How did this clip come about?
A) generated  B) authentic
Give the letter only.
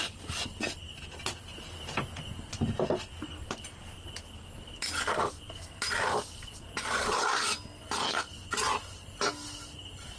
B